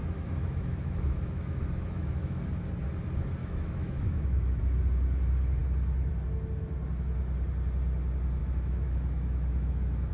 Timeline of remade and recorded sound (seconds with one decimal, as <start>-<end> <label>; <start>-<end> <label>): 0.0-2.4 remade; 2.4-3.4 recorded; 3.4-4.6 remade; 4.6-8.4 recorded; 8.4-10.1 remade